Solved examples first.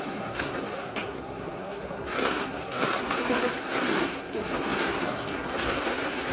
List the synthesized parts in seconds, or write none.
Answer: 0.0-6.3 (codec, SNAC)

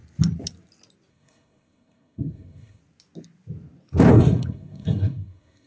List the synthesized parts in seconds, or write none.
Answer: 1.1-2.8 (codec, SNAC); 4.1-5.7

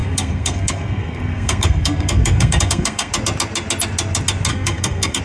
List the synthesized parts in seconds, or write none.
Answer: 0.0-3.1 (codec, SNAC); 4.5-5.2

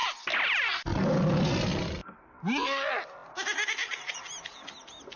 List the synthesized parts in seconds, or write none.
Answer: none

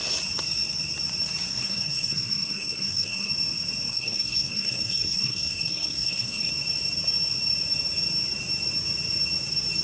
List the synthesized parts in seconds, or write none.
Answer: 1.5-3.3 (codec, SNAC); 3.9-6.5